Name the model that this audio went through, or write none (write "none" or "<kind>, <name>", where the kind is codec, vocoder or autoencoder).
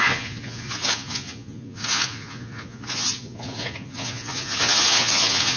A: vocoder, Vocos